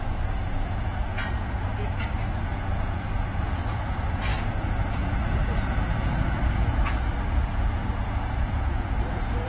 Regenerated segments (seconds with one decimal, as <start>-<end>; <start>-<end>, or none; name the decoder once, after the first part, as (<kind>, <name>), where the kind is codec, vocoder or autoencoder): 0.0-9.5 (vocoder, Vocos)